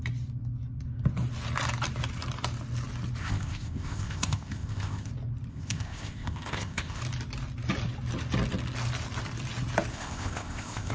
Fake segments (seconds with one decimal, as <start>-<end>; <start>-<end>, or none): 3.2-5.1; 5.5-7.0; 9.9-10.9